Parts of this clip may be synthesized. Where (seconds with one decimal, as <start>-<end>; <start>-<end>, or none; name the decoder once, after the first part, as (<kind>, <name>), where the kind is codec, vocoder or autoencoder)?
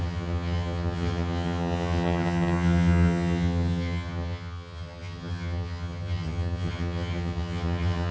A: 0.0-8.1 (vocoder, HiFi-GAN)